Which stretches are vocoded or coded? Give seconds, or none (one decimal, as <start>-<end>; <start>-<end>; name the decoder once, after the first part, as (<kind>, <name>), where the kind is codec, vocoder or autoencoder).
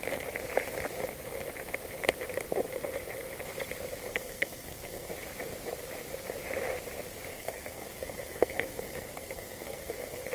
4.1-5.1 (codec, SNAC); 7.3-10.3